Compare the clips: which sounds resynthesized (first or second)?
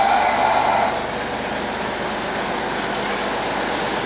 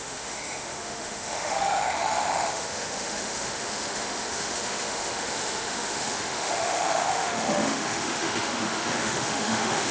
second